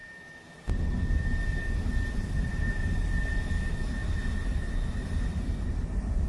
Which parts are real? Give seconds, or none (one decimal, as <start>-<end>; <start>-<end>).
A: 0.0-6.3